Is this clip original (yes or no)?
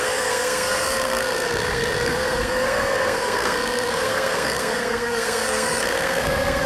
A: no